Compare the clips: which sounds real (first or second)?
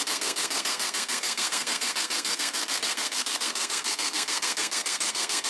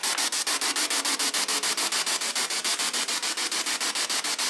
second